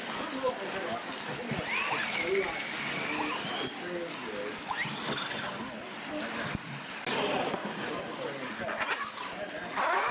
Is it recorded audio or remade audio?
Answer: recorded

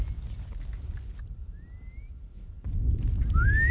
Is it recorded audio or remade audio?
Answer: recorded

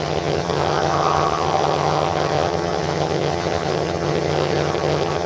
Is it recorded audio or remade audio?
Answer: remade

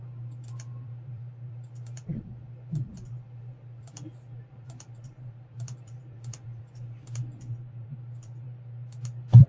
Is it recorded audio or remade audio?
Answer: remade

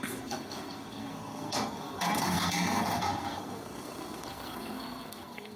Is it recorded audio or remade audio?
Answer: remade